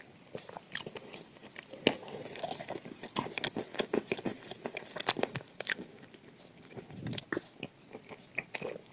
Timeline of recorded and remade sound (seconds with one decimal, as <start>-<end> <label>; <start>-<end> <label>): 0.0-8.9 recorded